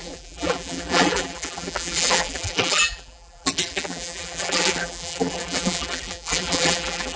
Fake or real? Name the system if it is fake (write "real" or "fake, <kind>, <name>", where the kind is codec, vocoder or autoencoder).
fake, vocoder, BigVGAN v2